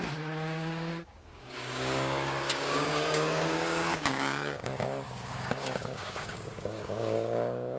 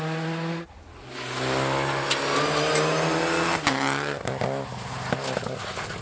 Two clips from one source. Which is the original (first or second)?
second